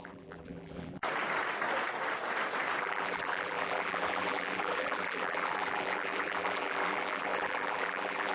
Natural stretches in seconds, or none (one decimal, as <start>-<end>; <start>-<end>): 1.0-2.8